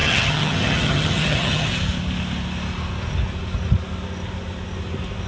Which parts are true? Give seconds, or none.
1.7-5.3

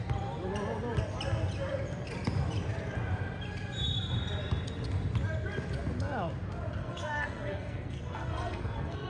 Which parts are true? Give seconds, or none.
0.0-6.8

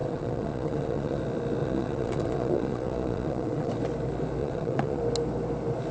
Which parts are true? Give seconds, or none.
1.2-1.6; 3.7-4.4; 5.0-5.9

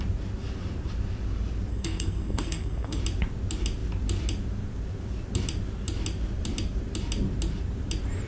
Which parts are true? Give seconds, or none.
0.0-1.7; 3.0-8.3

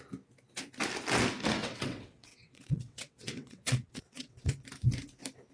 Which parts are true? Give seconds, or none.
0.0-1.6; 4.6-5.5

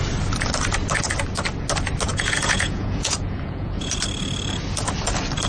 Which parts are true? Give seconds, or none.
0.0-2.1; 3.9-5.5

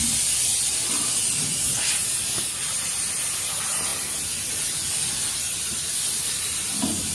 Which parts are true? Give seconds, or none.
0.5-2.9; 3.9-4.5

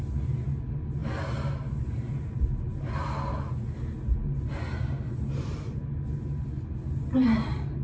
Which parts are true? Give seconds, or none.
0.0-7.8